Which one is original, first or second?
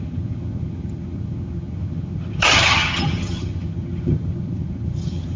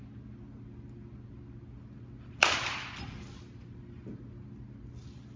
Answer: second